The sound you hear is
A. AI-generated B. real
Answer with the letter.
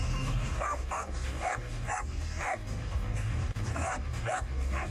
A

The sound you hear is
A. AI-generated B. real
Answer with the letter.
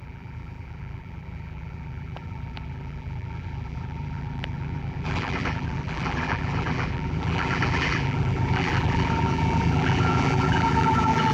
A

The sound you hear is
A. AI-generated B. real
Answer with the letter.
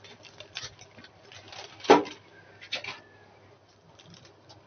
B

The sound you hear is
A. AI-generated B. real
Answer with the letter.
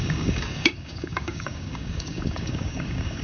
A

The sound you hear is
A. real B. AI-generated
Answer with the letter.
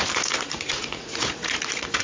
B